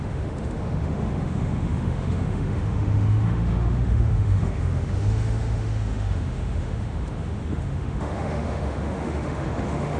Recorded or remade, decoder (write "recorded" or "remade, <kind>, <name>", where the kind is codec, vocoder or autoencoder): remade, autoencoder, DAC-VAE